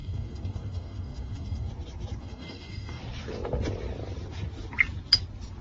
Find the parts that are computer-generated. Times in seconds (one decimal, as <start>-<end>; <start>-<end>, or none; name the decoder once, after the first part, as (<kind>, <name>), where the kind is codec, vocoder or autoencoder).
0.0-1.7 (codec, DAC); 2.2-3.0